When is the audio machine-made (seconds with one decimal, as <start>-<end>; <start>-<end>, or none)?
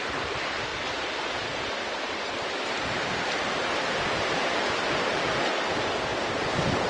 none